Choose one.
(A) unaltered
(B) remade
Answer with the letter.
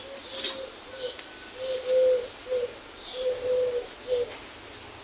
A